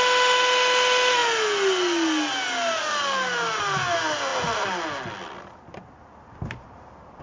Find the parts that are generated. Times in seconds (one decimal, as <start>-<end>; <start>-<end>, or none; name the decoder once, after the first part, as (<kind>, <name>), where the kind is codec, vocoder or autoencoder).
none